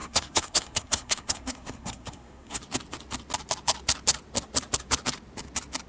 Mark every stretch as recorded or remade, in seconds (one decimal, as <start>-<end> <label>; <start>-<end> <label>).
0.0-2.6 remade; 2.6-5.9 recorded